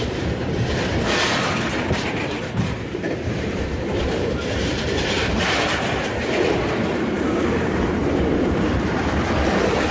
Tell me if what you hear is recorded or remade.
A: remade